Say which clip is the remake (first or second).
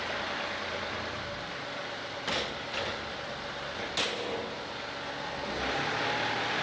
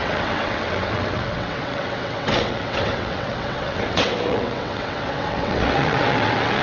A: second